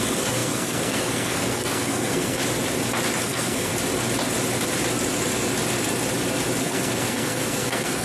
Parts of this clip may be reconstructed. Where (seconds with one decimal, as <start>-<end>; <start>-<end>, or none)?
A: 0.0-2.4; 3.2-3.7; 6.6-8.0